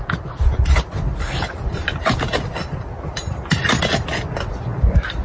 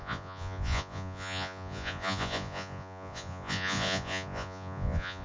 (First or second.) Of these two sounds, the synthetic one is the second